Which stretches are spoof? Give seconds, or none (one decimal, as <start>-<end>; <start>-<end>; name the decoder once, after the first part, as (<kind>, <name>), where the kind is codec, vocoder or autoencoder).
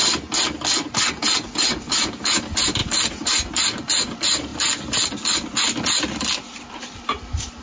1.2-4.5 (vocoder, BigVGAN v2); 6.7-7.6